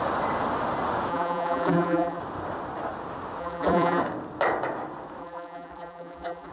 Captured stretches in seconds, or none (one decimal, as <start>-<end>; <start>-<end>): 0.0-1.1; 2.2-3.4; 4.0-5.2